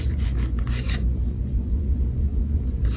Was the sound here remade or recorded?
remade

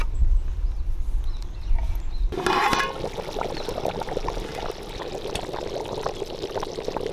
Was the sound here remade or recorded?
recorded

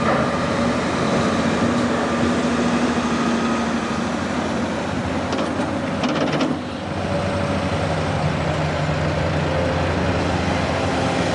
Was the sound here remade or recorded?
recorded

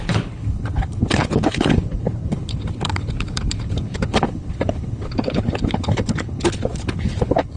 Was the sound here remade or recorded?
remade